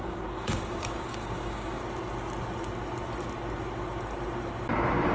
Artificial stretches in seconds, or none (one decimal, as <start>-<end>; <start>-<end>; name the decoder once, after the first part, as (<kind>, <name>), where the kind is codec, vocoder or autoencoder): 0.0-1.8 (codec, DAC)